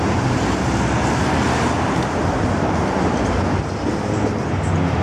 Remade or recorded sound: recorded